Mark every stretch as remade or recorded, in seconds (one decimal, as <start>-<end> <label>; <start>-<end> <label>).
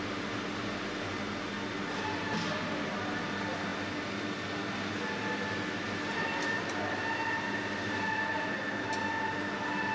0.0-9.9 recorded